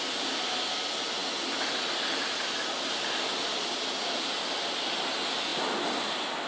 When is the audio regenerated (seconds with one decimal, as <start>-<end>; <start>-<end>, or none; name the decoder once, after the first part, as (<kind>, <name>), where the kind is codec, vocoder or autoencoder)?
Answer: none